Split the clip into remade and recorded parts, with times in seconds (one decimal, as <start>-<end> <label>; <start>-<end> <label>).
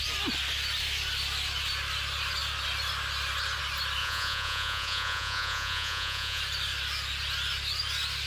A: 0.0-4.0 recorded; 4.0-6.4 remade; 6.4-8.3 recorded